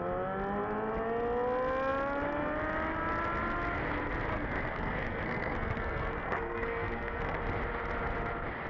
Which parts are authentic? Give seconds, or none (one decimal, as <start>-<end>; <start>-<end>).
0.0-4.3; 7.4-8.7